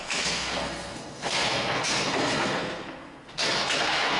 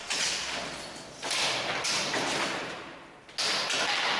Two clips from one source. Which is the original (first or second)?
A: second